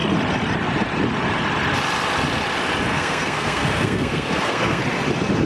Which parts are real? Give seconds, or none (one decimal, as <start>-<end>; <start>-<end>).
0.0-2.9; 4.8-5.5